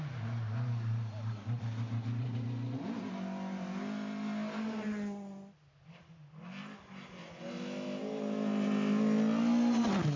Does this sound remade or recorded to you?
recorded